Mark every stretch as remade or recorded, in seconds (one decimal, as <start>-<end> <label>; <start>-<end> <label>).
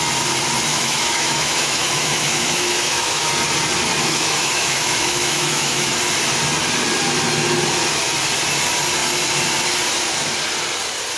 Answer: 0.0-0.7 recorded; 0.7-3.3 remade; 3.3-4.0 recorded; 4.0-5.9 remade; 5.9-11.2 recorded